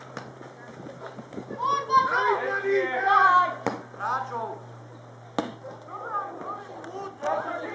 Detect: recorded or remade recorded